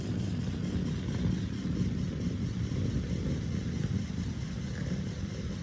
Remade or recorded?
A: recorded